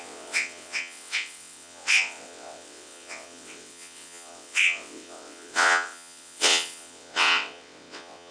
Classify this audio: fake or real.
fake